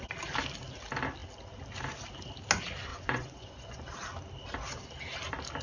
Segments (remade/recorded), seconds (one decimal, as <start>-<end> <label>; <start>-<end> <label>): 0.0-2.9 recorded; 2.9-3.8 remade; 3.8-5.6 recorded

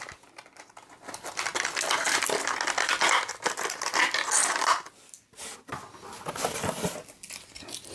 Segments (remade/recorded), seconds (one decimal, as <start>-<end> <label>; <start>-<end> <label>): 0.0-7.9 recorded

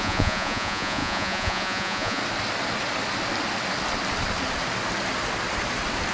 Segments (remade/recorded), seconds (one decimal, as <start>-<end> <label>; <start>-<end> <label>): 0.0-2.2 remade; 2.2-6.1 recorded

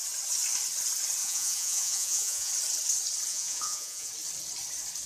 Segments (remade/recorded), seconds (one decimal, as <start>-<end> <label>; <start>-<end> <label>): 0.0-1.2 recorded; 1.2-2.5 remade; 2.5-3.3 recorded; 3.3-4.1 remade; 4.1-5.1 recorded

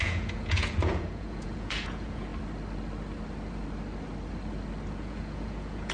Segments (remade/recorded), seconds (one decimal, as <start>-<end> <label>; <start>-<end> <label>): 0.0-2.3 remade; 2.3-4.9 recorded; 4.9-5.9 remade

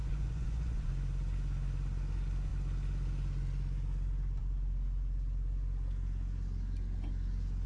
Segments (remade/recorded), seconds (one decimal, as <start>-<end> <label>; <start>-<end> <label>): 0.0-0.9 remade; 0.9-7.7 recorded

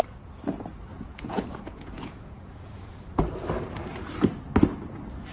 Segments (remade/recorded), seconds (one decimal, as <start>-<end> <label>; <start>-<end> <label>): 0.0-0.9 recorded; 0.9-3.2 remade; 3.2-5.3 recorded